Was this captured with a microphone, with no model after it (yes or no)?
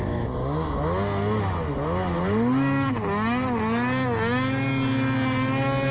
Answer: yes